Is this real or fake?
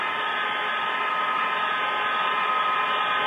real